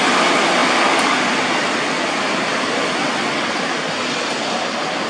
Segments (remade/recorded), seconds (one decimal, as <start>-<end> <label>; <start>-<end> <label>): 0.0-3.0 recorded; 3.0-3.6 remade; 3.6-5.1 recorded